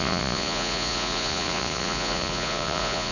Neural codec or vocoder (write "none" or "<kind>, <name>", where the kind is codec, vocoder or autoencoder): vocoder, Vocos